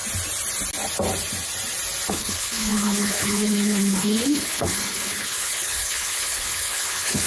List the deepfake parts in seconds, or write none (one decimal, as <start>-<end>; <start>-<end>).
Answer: 2.1-7.3